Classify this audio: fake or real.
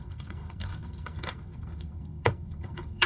fake